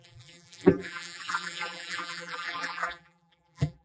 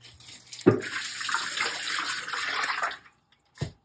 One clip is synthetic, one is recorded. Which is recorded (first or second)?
second